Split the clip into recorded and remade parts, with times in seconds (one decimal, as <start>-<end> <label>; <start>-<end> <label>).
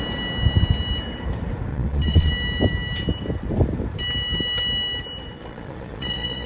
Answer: 0.0-1.7 recorded; 1.7-2.3 remade; 2.3-5.4 recorded; 5.4-6.5 remade